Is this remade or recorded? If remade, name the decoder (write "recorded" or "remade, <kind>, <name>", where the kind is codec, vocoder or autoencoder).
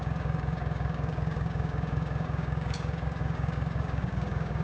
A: remade, codec, DAC